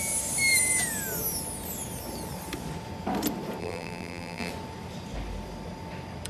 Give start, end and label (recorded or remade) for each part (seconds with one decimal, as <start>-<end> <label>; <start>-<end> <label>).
0.0-3.6 recorded; 3.6-4.5 remade; 4.5-6.3 recorded